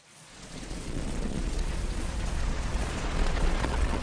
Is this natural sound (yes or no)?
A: no